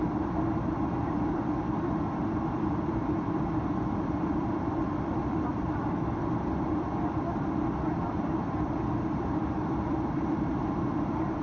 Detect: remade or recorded remade